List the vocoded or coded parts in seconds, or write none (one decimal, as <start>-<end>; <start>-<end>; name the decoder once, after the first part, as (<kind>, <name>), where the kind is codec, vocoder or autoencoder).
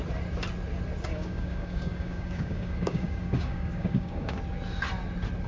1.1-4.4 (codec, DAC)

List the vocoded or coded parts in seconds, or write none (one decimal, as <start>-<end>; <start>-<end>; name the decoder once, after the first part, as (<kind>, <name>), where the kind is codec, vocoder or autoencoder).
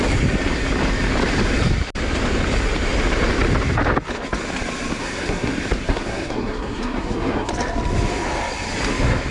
5.0-5.5 (codec, SNAC); 5.9-7.5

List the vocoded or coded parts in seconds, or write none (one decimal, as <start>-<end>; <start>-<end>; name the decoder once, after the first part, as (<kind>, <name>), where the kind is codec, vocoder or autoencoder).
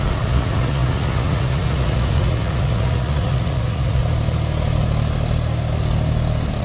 0.0-4.0 (vocoder, Vocos)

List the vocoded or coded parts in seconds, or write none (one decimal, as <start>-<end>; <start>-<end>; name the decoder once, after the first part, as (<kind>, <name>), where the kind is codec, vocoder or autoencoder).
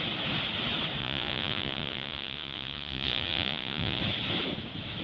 1.0-4.0 (vocoder, Vocos)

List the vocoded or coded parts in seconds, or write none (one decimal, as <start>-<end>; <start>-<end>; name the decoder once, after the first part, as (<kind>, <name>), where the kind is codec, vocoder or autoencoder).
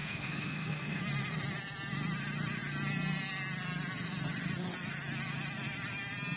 0.0-1.0 (codec, SNAC)